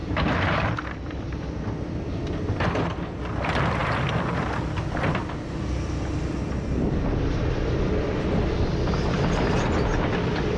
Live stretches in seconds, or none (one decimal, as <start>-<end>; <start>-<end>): 0.0-10.6